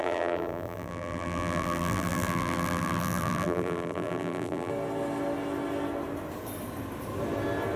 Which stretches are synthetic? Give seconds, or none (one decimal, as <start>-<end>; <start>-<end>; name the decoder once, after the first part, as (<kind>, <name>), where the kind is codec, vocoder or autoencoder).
0.0-4.7 (vocoder, BigVGAN v2)